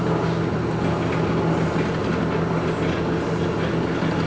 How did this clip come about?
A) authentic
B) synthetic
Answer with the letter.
A